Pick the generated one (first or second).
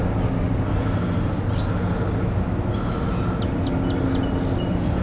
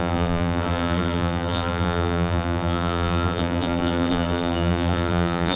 second